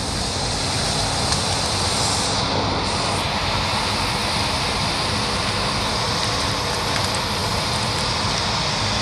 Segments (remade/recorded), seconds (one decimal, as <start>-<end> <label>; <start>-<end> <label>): 0.0-9.0 recorded